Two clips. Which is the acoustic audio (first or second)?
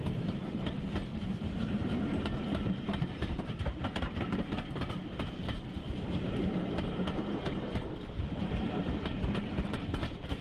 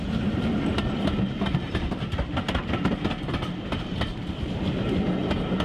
second